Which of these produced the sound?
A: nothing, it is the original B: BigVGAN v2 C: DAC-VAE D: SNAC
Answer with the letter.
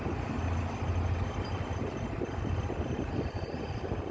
A